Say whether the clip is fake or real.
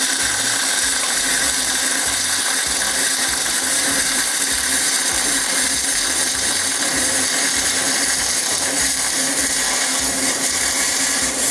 fake